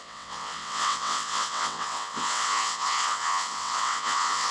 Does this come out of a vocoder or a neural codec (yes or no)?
yes